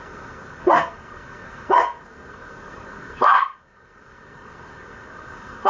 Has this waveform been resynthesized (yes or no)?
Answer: yes